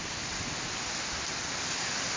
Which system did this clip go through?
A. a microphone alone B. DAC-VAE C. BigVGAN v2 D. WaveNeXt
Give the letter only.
A